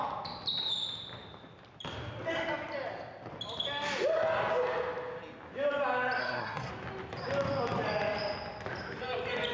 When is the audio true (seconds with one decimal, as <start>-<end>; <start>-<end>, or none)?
0.0-6.2; 6.7-9.5